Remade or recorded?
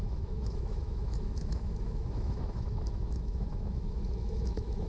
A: remade